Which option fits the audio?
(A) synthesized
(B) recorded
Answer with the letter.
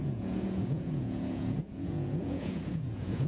A